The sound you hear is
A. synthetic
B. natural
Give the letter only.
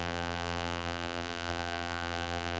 A